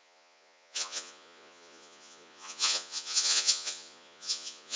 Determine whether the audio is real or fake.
fake